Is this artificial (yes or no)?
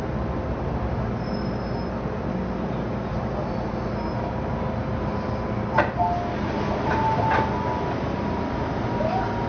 no